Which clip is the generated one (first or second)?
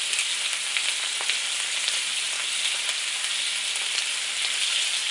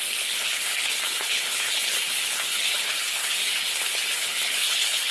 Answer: second